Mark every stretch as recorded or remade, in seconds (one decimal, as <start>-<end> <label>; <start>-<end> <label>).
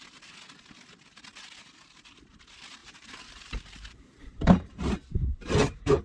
0.0-2.8 recorded; 2.8-6.0 remade